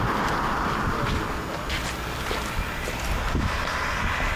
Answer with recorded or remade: recorded